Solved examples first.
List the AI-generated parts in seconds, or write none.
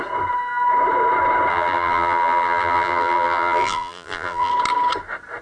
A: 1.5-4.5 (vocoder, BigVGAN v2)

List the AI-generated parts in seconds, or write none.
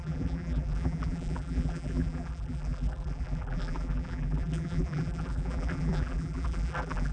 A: 0.0-7.1 (vocoder, BigVGAN v2)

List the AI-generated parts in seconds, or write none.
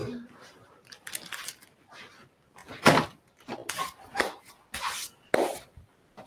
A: 0.0-1.1 (vocoder, BigVGAN v2)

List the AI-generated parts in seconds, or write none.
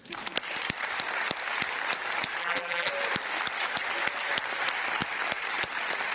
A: 2.4-2.9 (vocoder, BigVGAN v2)